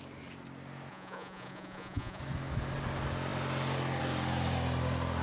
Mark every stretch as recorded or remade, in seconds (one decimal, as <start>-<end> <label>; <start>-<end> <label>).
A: 0.0-0.9 recorded; 0.9-2.2 remade; 2.2-5.2 recorded